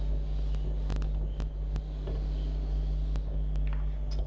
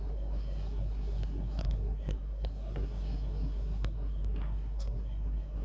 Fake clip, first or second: second